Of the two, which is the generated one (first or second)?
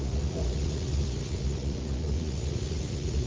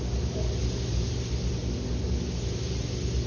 first